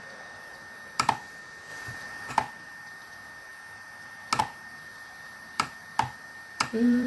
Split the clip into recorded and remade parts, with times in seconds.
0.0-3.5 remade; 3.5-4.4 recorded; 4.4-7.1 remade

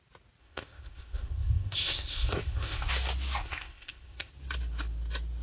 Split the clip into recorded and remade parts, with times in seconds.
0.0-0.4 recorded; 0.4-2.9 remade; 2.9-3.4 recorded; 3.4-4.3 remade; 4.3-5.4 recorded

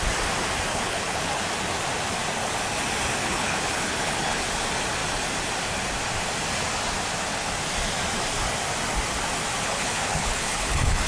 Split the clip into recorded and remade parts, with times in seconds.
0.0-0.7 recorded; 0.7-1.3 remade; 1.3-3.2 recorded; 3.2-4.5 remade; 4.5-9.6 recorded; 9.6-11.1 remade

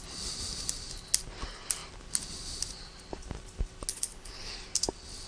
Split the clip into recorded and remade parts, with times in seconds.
0.0-3.9 recorded; 3.9-4.5 remade; 4.5-5.3 recorded

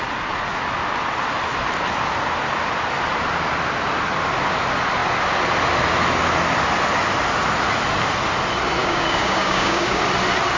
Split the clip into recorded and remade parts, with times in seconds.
0.0-8.8 recorded; 8.8-10.0 remade; 10.0-10.6 recorded